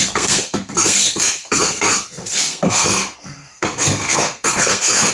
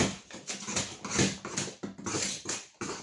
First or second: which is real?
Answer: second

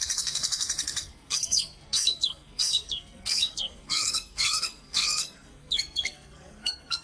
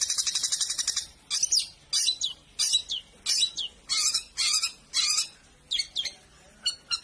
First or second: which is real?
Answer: second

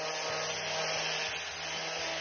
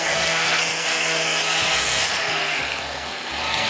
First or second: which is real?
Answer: first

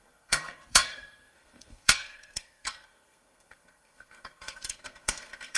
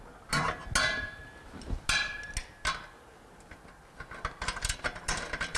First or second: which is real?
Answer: second